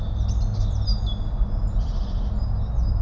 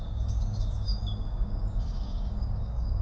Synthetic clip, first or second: second